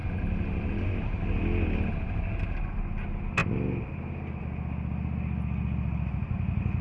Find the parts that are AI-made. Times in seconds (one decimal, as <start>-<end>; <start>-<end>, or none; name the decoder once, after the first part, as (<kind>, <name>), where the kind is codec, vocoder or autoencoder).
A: none